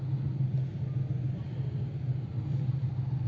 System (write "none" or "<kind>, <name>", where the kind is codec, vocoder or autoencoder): none